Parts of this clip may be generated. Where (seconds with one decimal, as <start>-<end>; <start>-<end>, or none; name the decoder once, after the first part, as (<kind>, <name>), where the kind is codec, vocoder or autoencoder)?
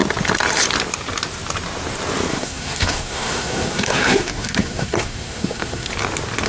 2.3-5.9 (codec, SNAC)